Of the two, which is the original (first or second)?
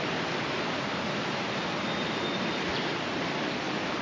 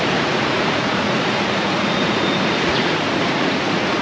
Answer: first